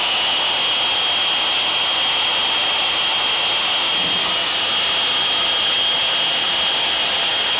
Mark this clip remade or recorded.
recorded